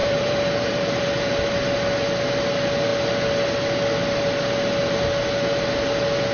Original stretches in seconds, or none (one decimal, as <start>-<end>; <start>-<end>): 1.3-6.3